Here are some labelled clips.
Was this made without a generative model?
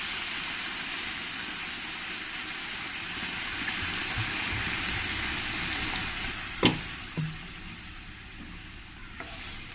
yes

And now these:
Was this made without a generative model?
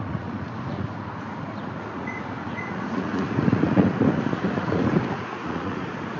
no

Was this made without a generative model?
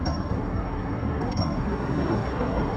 no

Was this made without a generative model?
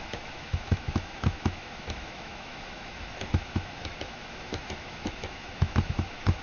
no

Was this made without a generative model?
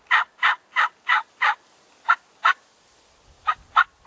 yes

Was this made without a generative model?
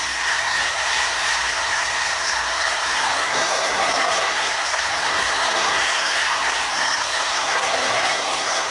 no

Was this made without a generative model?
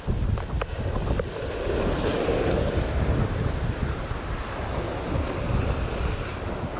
yes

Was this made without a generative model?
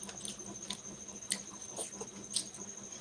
yes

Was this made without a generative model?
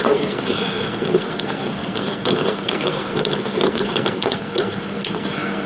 no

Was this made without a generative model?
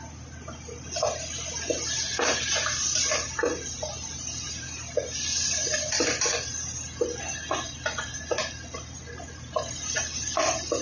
yes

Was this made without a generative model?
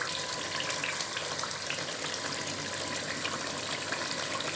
yes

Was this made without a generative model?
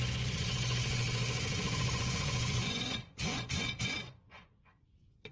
no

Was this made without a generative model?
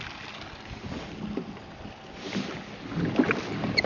yes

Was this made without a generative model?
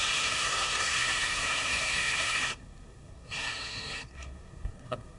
no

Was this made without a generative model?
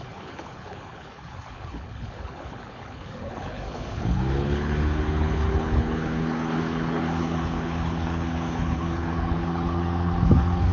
no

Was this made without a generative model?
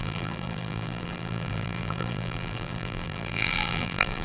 no